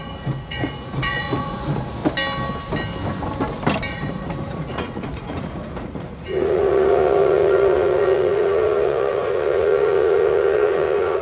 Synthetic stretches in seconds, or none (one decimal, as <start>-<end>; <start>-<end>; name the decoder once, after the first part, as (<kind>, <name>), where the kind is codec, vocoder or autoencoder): 0.0-2.0 (vocoder, Vocos); 3.9-11.2